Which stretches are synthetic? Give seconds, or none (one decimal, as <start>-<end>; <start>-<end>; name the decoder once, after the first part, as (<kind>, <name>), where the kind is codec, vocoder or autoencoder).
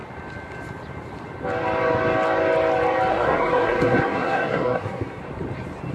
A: 3.1-5.2 (codec, SNAC)